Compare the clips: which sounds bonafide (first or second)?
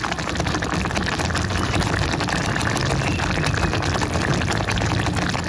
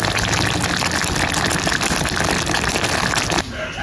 second